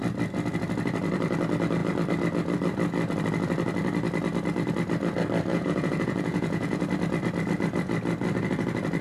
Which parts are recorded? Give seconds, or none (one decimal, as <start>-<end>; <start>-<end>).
0.0-5.5; 6.8-9.0